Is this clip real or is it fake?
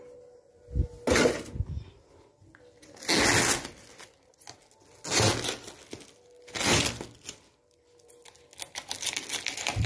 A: real